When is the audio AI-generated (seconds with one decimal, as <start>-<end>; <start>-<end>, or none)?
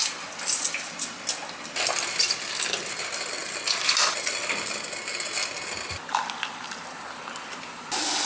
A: none